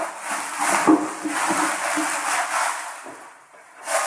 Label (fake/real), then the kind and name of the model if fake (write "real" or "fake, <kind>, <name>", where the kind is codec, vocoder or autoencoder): real